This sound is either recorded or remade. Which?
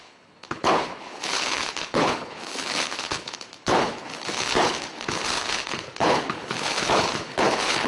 remade